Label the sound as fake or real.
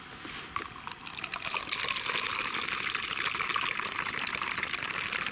real